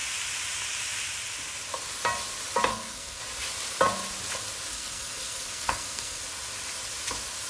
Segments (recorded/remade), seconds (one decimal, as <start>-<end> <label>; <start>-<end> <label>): 0.0-2.7 recorded; 2.7-3.2 remade; 3.2-4.7 recorded; 4.7-6.2 remade; 6.2-7.5 recorded